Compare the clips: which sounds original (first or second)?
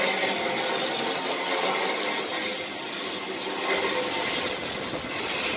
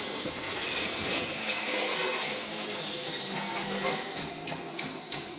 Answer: first